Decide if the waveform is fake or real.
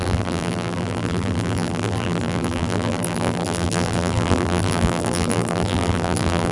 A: fake